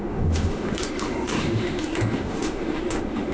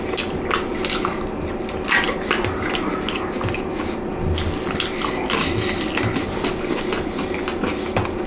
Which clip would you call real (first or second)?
second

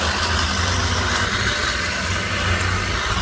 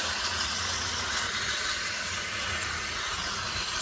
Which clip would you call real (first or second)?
first